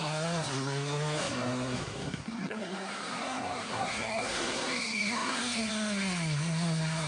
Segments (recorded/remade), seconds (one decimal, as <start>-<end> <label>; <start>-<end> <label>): 0.0-7.1 remade